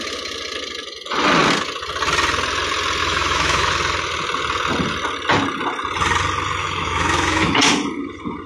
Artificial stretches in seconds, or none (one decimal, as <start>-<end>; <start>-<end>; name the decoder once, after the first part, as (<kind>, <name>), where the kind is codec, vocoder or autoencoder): 3.0-3.7 (autoencoder, DAC-VAE); 6.6-7.6